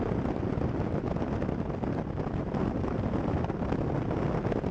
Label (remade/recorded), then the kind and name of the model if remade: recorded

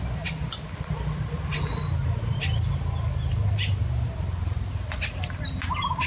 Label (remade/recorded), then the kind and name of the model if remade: recorded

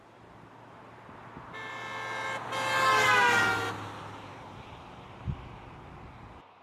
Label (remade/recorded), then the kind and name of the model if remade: recorded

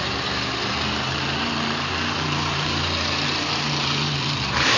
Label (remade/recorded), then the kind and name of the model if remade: remade, vocoder, BigVGAN v2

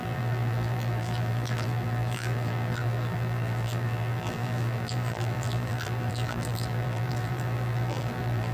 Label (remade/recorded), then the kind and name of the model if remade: remade, vocoder, BigVGAN v2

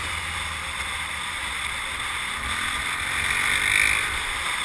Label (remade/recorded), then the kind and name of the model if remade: recorded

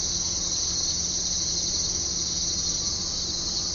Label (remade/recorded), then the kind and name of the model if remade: recorded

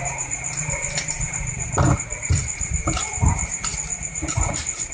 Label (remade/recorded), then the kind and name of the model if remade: remade, vocoder, BigVGAN v2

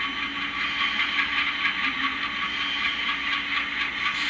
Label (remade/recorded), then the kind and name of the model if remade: recorded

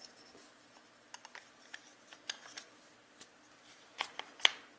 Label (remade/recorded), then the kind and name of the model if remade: recorded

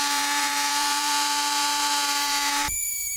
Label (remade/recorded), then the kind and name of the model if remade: remade, vocoder, BigVGAN v2